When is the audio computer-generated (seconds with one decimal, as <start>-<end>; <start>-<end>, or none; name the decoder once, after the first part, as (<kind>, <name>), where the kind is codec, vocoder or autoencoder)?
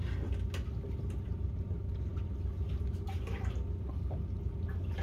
none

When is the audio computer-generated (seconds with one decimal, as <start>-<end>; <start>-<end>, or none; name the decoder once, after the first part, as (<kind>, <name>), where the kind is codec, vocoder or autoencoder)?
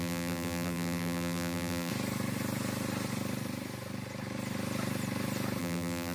0.0-1.9 (vocoder, BigVGAN v2); 5.6-6.1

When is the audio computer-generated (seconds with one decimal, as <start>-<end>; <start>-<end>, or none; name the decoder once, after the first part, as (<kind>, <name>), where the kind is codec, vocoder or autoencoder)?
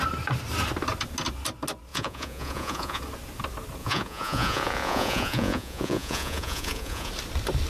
1.9-3.0 (vocoder, Vocos); 3.8-7.1